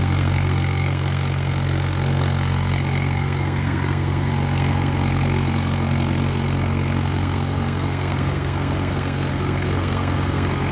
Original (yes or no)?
no